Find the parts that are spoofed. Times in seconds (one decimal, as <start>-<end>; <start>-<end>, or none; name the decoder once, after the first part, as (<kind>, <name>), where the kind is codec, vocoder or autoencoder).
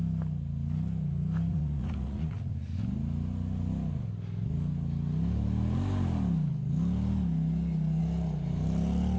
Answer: 1.5-2.5 (vocoder, Vocos)